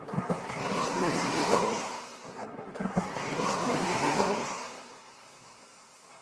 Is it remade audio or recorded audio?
remade